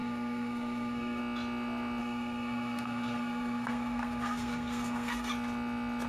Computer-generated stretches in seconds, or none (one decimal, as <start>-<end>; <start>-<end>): 0.0-1.2; 2.0-5.3